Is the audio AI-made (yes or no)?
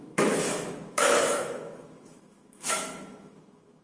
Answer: yes